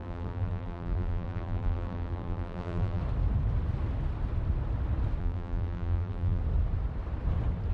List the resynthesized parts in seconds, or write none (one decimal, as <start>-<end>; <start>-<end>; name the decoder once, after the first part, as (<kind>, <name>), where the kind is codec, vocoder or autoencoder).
0.0-3.0 (vocoder, BigVGAN v2); 5.2-6.4